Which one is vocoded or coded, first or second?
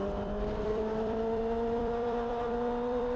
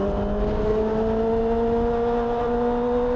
first